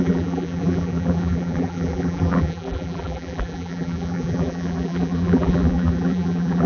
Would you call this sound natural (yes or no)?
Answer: no